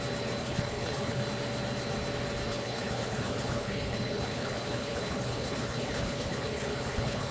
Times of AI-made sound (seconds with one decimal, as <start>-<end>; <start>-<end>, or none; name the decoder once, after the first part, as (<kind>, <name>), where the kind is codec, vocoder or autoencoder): 0.4-1.2 (codec, HILCodec); 2.5-7.3